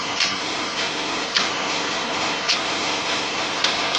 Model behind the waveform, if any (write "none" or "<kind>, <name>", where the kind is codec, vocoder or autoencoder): codec, SNAC